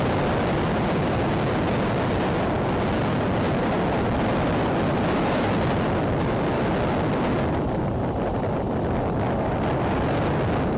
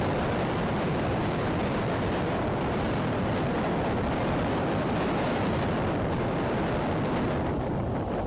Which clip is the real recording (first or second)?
first